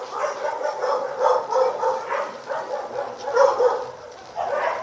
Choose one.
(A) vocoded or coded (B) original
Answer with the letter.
B